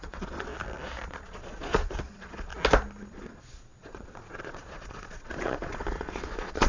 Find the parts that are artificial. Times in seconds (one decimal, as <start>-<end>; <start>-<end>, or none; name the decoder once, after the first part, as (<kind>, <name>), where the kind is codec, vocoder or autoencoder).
0.0-0.5 (vocoder, Vocos); 1.1-2.5; 3.1-6.7